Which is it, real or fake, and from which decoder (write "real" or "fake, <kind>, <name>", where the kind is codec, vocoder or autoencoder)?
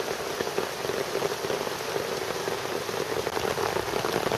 real